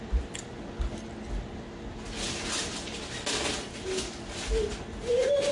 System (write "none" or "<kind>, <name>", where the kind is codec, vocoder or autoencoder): none